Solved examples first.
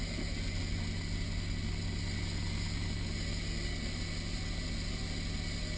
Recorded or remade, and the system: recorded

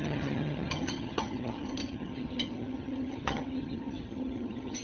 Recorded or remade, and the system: remade, vocoder, HiFi-GAN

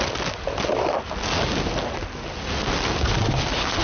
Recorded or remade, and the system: recorded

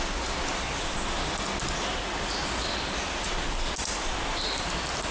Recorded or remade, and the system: recorded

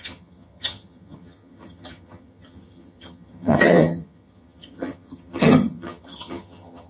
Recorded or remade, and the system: remade, vocoder, HiFi-GAN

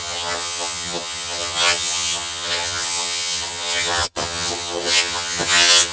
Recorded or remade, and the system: remade, vocoder, HiFi-GAN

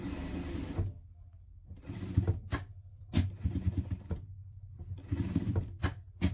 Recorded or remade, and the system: recorded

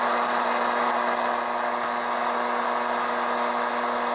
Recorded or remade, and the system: recorded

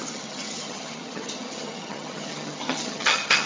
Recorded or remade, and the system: remade, vocoder, HiFi-GAN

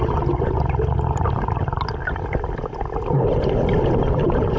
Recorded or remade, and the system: recorded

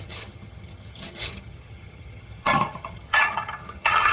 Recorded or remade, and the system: remade, vocoder, HiFi-GAN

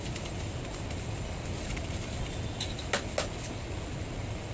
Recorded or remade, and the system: recorded